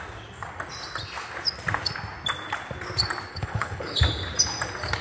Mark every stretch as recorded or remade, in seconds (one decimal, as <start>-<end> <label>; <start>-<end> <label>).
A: 0.0-3.3 recorded; 3.3-4.0 remade; 4.0-5.0 recorded